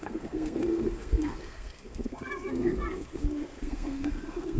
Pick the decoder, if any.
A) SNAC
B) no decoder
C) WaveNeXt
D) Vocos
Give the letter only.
A